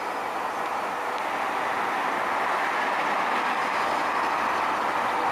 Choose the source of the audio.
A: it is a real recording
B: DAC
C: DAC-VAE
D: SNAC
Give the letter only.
A